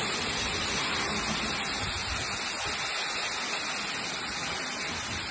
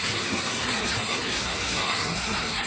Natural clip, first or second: first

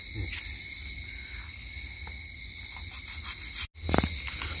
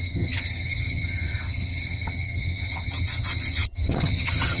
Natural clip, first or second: first